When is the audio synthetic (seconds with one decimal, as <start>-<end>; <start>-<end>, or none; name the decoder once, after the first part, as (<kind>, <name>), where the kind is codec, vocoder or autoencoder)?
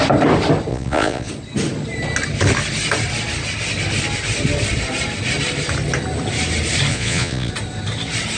0.7-1.3 (vocoder, Vocos); 6.9-7.5